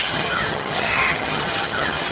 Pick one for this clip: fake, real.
fake